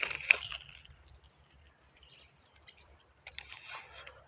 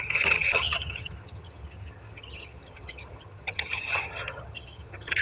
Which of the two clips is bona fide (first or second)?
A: first